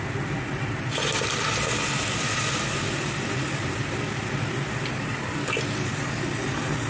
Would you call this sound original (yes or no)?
yes